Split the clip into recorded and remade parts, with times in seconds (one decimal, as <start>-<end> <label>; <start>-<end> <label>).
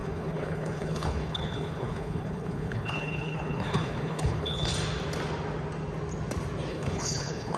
0.0-4.7 remade; 4.7-6.7 recorded; 6.7-7.6 remade